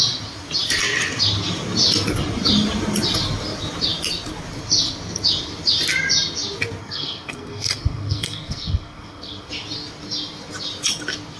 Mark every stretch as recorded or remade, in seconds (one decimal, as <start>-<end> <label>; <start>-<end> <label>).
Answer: 0.0-6.8 recorded; 6.8-9.5 remade; 9.5-11.4 recorded